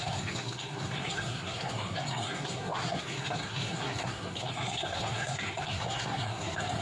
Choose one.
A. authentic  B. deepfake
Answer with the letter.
B